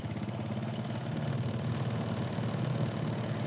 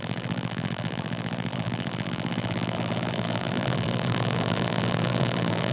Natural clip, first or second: first